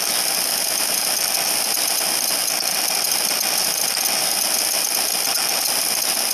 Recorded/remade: recorded